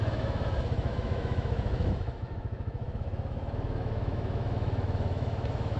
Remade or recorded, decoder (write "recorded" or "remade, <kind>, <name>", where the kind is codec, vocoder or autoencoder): remade, autoencoder, DAC-VAE